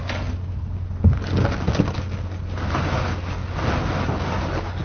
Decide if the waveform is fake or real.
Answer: real